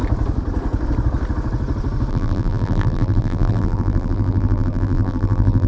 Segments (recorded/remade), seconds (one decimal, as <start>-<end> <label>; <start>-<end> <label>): 0.0-2.1 recorded; 2.1-5.7 remade

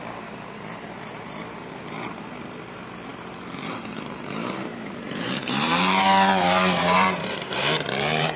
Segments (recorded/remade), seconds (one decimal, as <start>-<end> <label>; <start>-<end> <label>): 0.0-1.0 recorded; 1.0-8.4 remade